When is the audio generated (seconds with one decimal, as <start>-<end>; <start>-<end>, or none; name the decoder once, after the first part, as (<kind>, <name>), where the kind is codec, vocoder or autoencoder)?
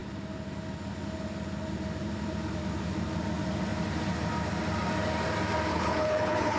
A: 5.7-6.6 (codec, HILCodec)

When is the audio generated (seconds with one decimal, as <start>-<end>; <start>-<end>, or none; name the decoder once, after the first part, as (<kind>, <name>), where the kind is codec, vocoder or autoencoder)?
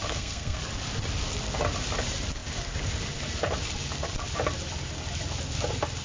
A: 0.0-0.6 (codec, SNAC)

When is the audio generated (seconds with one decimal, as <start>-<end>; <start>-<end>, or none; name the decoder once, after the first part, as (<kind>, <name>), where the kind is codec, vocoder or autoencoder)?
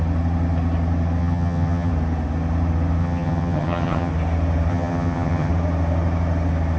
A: 1.2-1.9 (vocoder, HiFi-GAN); 3.0-4.1; 4.7-5.5